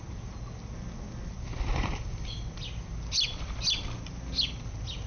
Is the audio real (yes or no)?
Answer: yes